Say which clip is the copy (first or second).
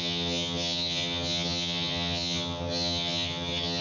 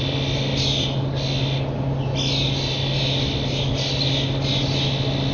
first